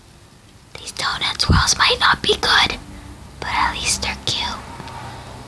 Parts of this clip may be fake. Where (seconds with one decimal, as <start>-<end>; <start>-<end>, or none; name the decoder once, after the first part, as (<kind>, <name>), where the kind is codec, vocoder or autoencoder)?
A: none

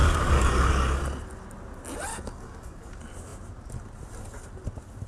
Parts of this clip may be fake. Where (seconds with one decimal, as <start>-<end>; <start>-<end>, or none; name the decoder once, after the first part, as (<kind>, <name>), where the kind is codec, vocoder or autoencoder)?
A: 0.0-1.0 (codec, DAC); 2.1-2.9

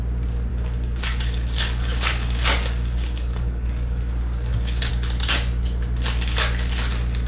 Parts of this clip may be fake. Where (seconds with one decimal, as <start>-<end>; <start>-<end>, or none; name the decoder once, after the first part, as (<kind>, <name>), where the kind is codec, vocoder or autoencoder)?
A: 0.5-4.9 (codec, DAC)

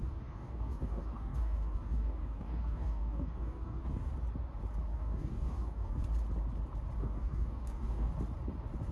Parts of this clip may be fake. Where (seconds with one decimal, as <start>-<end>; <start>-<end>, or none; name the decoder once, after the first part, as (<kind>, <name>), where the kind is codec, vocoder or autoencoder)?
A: 0.0-4.1 (codec, DAC); 4.9-6.0; 7.0-8.1

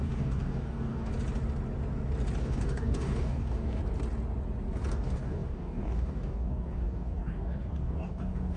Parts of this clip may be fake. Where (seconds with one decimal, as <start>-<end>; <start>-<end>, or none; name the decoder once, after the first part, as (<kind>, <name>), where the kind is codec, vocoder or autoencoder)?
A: 0.0-1.1 (codec, DAC); 2.4-3.8; 4.9-8.6